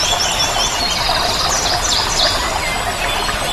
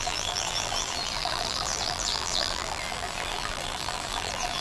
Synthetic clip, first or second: second